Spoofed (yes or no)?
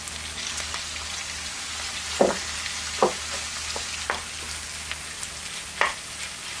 no